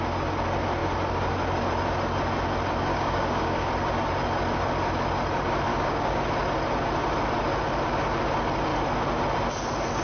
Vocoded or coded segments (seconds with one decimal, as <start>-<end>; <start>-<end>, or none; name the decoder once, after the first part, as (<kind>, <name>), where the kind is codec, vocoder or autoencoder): 2.9-3.7 (codec, DAC); 5.7-6.2